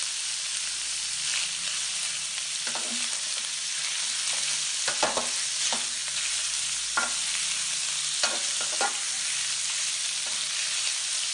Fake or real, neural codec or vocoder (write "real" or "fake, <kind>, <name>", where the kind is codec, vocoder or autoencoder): real